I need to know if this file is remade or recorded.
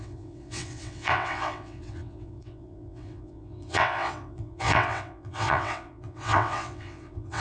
remade